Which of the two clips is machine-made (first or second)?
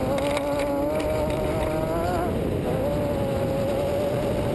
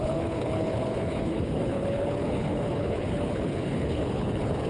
second